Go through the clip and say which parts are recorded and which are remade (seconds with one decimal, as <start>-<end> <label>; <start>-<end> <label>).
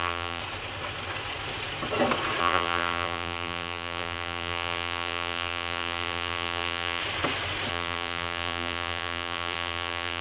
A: 0.0-0.4 remade; 0.4-2.4 recorded; 2.4-7.0 remade; 7.0-7.7 recorded; 7.7-10.2 remade